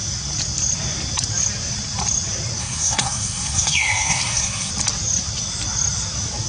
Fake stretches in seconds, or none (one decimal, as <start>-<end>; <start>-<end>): 2.6-4.7